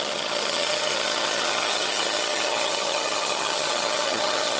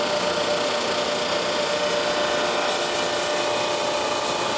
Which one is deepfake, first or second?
first